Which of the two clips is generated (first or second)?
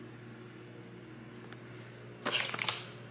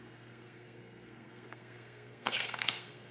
second